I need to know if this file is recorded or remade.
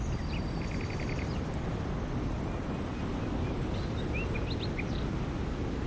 recorded